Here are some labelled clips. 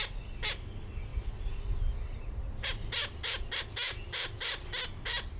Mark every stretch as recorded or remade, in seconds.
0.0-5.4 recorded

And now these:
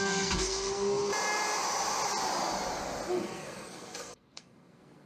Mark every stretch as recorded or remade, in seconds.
0.0-1.1 remade; 1.1-3.1 recorded; 3.1-5.1 remade

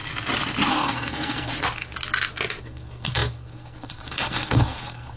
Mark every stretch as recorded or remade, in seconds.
0.0-0.7 recorded; 0.7-1.5 remade; 1.5-2.6 recorded; 2.6-5.2 remade

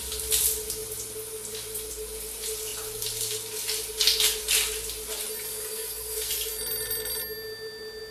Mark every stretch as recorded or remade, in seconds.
0.0-5.5 recorded; 5.5-6.3 remade; 6.3-8.1 recorded

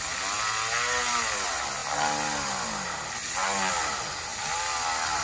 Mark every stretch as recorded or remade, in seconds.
0.0-5.2 recorded

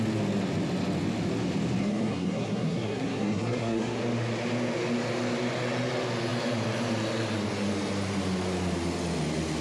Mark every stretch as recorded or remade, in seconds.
0.0-1.8 recorded; 1.8-4.0 remade; 4.0-9.6 recorded